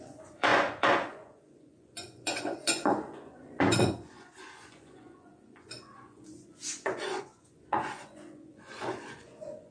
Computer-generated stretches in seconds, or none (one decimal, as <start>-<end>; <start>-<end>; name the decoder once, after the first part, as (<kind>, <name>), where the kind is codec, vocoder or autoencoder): 0.0-9.7 (vocoder, Vocos)